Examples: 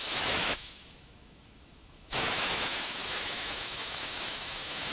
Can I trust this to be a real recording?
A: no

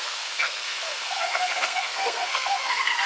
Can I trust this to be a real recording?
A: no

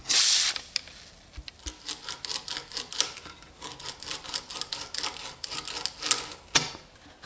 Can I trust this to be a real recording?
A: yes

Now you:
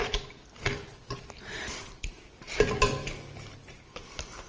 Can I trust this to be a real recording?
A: yes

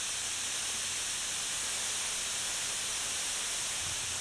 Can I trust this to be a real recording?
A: yes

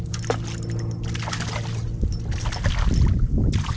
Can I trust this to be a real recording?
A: yes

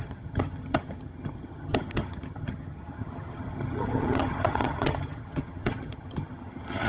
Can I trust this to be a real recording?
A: no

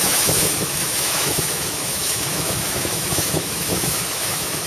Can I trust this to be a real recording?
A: no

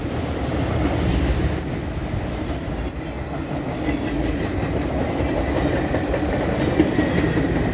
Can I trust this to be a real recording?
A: yes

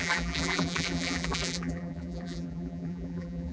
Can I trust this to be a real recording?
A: no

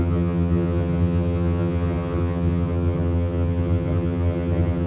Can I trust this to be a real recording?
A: no